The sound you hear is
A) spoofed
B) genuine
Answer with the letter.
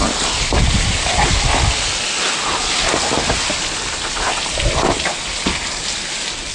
B